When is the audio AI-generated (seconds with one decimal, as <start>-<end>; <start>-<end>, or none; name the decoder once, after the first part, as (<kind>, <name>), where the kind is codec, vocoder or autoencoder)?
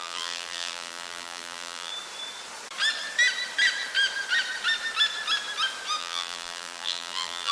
0.0-1.9 (vocoder, BigVGAN v2); 6.0-7.5